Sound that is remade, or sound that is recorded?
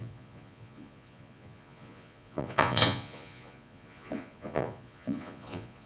remade